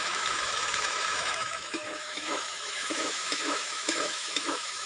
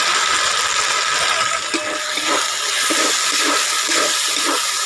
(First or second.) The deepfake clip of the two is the first